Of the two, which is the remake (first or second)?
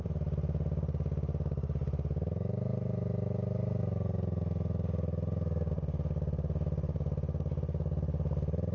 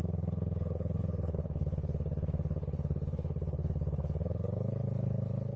second